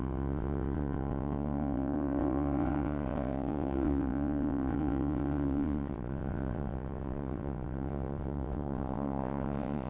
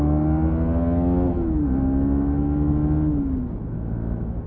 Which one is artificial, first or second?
first